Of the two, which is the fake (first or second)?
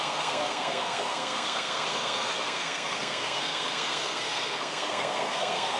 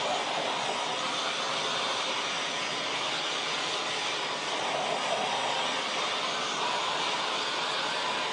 first